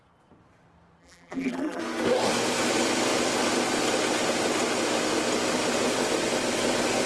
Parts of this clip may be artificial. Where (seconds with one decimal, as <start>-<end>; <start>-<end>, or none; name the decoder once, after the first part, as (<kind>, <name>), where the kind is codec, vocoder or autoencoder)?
1.0-1.8 (vocoder, BigVGAN v2)